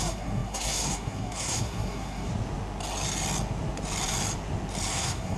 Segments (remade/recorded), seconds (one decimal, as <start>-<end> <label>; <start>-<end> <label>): 0.0-2.3 remade; 2.3-4.9 recorded; 4.9-5.4 remade